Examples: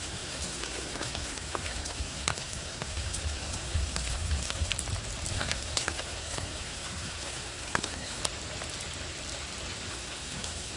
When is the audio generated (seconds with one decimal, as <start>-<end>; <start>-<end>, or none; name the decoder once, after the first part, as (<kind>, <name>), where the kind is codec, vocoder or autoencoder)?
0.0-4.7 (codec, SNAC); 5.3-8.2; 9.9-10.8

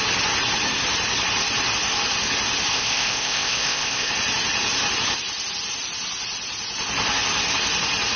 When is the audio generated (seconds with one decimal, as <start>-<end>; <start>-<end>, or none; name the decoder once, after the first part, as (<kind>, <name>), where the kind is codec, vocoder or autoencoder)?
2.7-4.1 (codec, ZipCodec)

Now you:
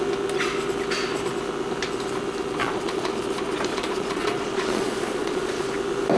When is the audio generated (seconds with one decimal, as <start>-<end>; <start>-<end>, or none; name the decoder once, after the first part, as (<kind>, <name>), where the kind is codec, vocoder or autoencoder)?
2.6-3.2 (vocoder, Vocos); 3.7-5.7

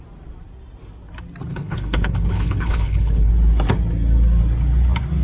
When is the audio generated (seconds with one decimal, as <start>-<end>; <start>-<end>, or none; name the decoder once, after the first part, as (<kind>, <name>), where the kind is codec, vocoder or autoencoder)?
1.5-3.3 (codec, HILCodec)

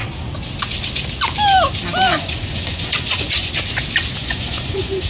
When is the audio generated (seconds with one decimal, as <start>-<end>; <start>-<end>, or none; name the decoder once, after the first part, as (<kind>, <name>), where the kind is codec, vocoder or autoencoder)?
2.1-3.5 (vocoder, Vocos); 4.2-5.1

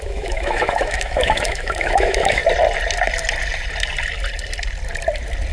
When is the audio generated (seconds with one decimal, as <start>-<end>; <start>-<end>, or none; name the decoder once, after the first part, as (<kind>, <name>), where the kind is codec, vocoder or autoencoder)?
0.0-2.4 (autoencoder, DAC-VAE)